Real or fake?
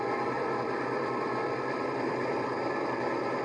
fake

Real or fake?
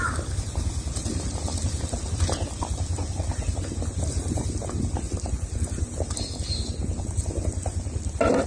real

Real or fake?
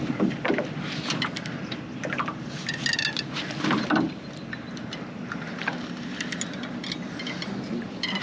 real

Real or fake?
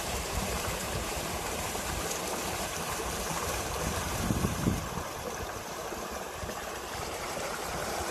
fake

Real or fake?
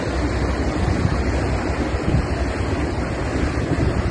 real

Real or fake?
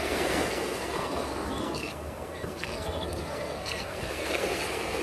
fake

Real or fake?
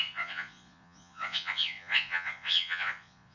fake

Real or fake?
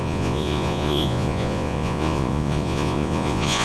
fake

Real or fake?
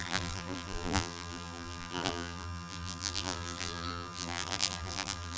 fake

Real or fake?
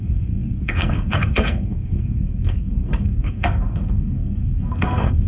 fake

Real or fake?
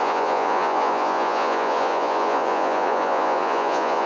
fake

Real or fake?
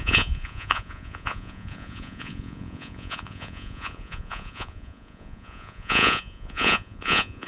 fake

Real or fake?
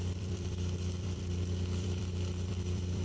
fake